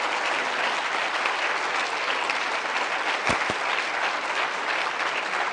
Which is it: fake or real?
real